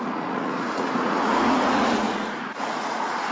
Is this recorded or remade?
remade